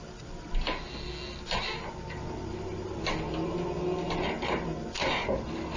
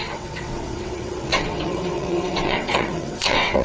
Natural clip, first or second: first